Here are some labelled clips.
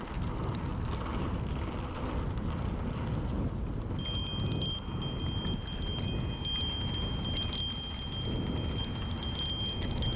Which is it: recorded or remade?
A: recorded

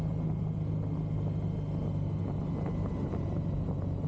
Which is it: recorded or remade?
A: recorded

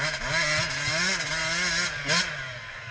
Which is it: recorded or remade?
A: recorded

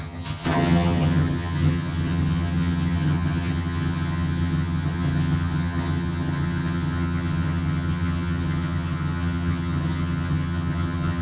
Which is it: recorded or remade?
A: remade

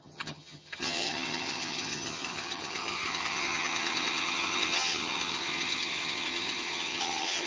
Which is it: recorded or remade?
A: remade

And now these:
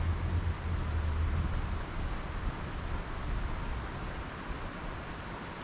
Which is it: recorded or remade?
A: recorded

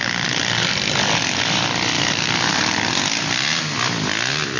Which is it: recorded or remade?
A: recorded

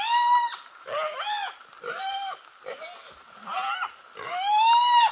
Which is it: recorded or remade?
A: recorded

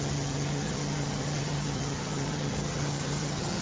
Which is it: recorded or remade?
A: remade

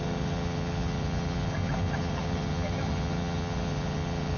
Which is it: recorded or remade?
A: remade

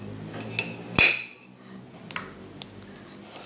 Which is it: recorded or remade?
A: recorded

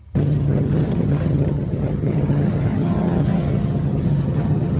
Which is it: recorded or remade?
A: remade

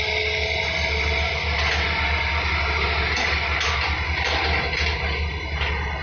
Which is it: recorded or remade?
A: recorded